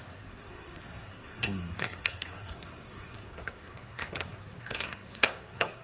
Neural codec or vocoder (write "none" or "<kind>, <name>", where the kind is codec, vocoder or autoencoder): codec, SNAC